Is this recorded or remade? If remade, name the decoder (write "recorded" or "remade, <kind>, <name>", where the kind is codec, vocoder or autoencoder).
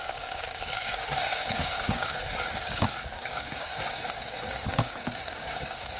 remade, codec, DAC